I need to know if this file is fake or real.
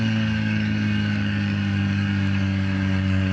fake